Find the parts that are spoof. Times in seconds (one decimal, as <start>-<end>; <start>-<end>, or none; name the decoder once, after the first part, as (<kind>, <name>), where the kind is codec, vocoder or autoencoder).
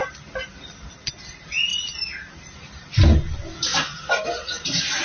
none